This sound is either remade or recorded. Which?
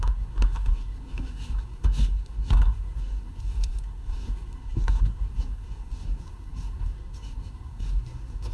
remade